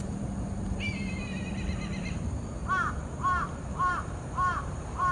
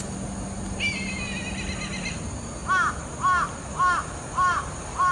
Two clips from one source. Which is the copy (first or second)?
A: first